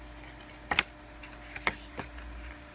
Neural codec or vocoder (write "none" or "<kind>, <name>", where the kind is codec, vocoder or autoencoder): none